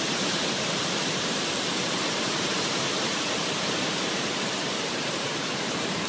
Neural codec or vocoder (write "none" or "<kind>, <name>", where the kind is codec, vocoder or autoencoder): vocoder, BigVGAN v2